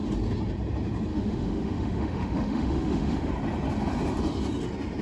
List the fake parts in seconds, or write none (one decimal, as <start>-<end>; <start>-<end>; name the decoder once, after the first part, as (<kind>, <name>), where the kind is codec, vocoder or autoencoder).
1.1-3.3 (autoencoder, DAC-VAE)